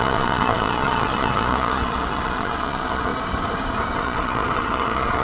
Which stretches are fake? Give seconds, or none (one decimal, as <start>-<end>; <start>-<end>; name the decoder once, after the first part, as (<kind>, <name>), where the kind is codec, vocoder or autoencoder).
0.0-3.1 (vocoder, Vocos); 4.0-5.2